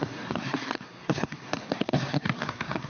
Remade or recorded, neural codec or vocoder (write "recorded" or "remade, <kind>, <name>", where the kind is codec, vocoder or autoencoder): remade, codec, SNAC